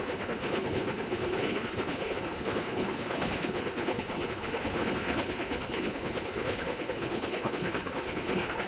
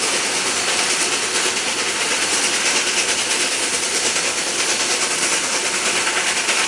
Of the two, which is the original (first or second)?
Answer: second